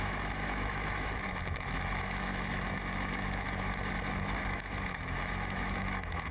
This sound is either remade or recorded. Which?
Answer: remade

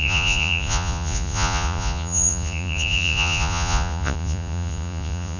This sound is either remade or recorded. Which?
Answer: remade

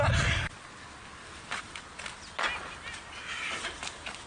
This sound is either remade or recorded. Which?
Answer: recorded